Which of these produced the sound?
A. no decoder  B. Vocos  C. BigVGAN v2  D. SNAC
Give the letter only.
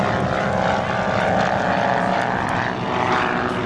A